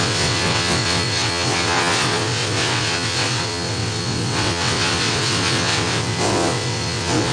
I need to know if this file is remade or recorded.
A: remade